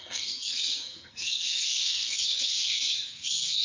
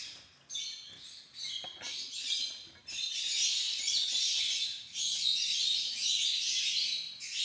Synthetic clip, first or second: first